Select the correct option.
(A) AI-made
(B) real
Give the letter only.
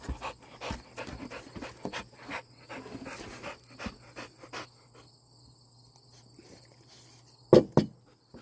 B